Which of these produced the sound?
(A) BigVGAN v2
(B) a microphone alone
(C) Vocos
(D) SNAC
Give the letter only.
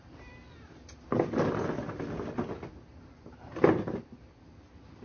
B